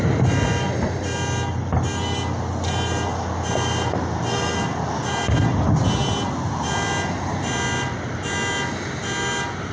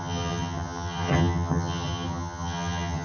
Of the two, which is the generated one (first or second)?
second